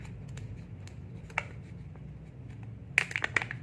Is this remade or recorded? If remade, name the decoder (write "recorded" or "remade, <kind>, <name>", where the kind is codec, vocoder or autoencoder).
recorded